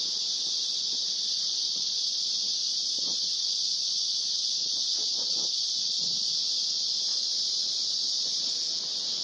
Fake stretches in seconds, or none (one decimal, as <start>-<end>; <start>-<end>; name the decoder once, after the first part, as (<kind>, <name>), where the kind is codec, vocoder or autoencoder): 1.5-2.3 (vocoder, Vocos); 2.7-6.3; 7.1-8.5